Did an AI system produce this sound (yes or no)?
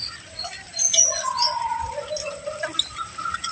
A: no